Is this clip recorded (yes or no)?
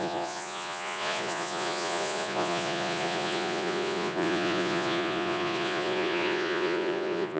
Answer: no